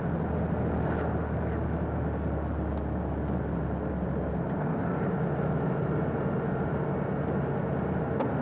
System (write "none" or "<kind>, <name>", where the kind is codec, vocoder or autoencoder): none